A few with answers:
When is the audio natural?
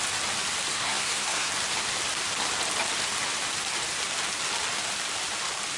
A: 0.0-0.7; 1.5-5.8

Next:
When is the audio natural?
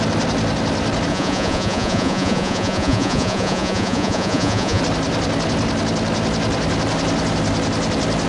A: 0.0-1.1; 4.8-8.3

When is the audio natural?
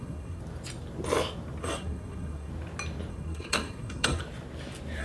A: 0.4-1.6; 2.5-3.1; 4.2-5.0